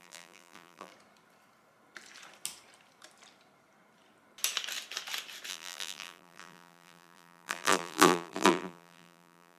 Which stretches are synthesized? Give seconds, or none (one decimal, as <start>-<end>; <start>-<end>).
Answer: 0.0-0.9; 5.5-9.6